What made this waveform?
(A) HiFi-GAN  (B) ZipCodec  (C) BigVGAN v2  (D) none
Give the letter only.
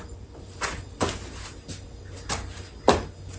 D